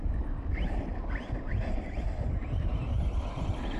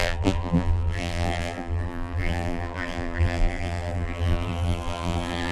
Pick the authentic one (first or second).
first